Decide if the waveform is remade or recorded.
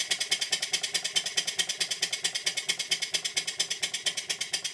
recorded